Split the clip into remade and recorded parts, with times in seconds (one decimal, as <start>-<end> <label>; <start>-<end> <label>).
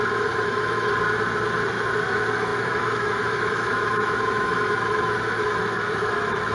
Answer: 0.0-0.9 remade; 0.9-2.1 recorded; 2.1-6.5 remade